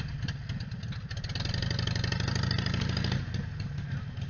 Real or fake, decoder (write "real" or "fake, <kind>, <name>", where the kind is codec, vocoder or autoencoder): real